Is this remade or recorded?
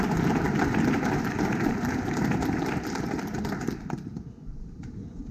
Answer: remade